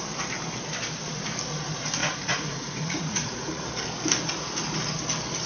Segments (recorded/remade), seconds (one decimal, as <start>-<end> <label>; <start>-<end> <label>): 0.0-2.0 recorded; 2.0-3.6 remade; 3.6-5.5 recorded